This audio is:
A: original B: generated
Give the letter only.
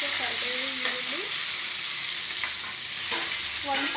A